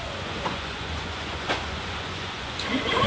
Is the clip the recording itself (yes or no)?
no